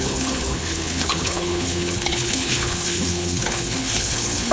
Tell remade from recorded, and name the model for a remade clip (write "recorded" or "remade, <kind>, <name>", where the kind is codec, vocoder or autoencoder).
remade, codec, HILCodec